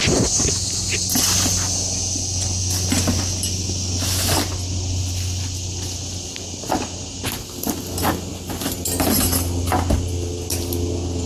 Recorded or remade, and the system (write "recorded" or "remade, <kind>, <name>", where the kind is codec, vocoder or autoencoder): recorded